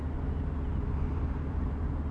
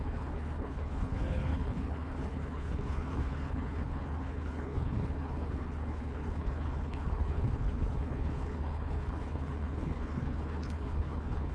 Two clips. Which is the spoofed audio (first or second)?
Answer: second